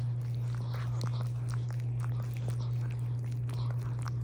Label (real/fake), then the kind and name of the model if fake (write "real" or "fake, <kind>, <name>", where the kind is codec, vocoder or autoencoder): real